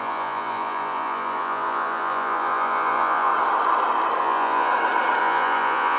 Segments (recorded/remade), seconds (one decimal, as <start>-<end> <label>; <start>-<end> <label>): 0.0-3.3 remade; 3.3-4.2 recorded; 4.2-4.7 remade; 4.7-5.2 recorded; 5.2-6.0 remade